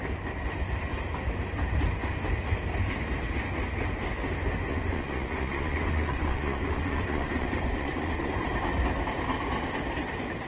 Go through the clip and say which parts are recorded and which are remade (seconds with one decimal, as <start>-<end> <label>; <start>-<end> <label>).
0.0-4.7 recorded; 4.7-8.4 remade; 8.4-10.5 recorded